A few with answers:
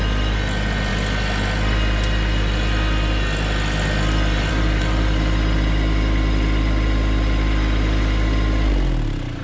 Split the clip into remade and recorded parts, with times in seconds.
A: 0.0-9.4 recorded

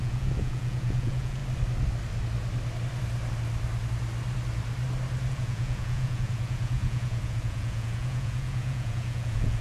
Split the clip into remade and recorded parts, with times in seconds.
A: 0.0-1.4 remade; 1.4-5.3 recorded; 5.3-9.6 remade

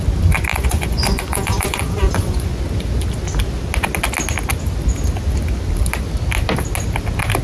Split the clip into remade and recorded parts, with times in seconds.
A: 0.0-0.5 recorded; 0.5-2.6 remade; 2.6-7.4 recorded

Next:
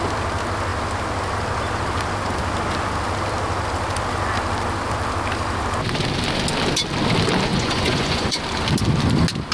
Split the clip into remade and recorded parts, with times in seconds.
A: 0.0-7.5 recorded; 7.5-8.4 remade; 8.4-9.5 recorded